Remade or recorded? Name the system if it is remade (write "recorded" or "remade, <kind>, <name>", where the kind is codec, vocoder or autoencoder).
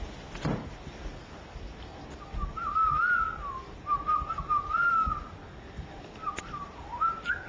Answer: recorded